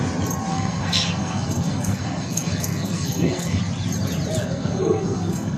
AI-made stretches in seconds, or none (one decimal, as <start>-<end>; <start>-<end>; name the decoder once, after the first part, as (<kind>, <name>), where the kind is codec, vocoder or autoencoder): 0.5-3.6 (codec, SNAC); 4.4-5.6